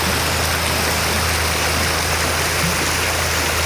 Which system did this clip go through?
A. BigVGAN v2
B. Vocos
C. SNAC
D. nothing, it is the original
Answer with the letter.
D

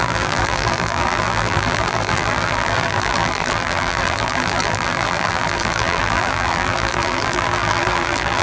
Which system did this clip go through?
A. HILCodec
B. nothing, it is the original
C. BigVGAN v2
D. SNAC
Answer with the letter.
C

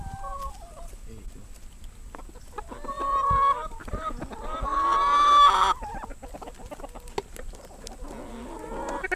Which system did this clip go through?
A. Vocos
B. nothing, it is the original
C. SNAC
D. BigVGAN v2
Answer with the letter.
B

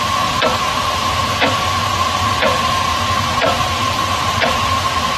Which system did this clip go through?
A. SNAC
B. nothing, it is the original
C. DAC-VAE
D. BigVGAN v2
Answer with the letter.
D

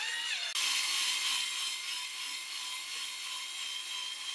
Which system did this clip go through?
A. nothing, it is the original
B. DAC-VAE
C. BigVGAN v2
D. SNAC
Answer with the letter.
A